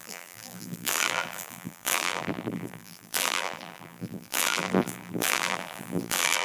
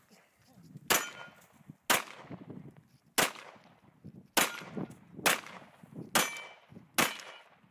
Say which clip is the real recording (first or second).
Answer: second